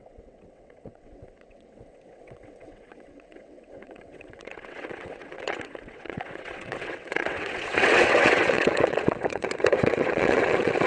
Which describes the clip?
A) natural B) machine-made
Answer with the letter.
B